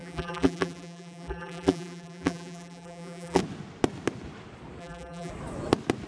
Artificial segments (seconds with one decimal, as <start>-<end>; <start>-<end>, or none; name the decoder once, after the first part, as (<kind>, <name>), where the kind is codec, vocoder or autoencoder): 0.0-3.4 (vocoder, BigVGAN v2); 4.8-5.3